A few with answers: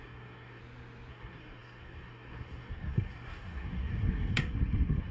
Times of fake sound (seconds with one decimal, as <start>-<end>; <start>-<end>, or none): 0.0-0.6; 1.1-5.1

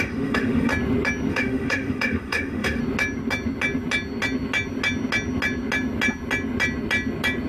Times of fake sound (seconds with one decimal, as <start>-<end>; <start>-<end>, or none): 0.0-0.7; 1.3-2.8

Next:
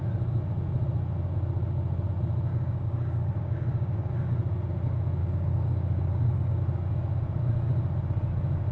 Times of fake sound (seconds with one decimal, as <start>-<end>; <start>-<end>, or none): 2.5-4.1; 5.2-6.6

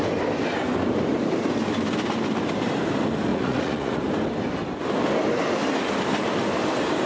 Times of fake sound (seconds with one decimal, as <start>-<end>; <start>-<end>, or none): 3.3-4.0